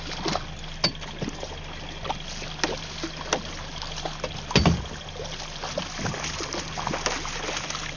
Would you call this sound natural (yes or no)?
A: yes